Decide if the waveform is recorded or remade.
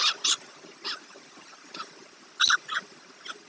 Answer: recorded